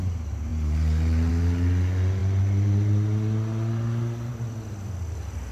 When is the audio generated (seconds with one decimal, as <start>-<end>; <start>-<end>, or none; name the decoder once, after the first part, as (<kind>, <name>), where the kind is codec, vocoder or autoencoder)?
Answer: none